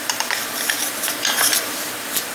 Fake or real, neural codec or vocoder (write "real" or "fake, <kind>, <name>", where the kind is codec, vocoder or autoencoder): fake, vocoder, BigVGAN v2